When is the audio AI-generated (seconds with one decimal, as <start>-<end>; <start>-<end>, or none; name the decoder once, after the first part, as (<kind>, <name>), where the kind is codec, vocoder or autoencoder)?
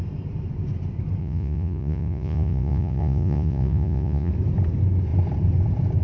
1.2-4.3 (vocoder, Vocos)